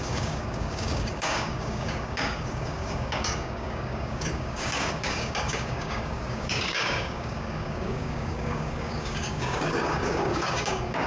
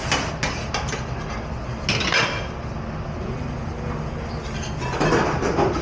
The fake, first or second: first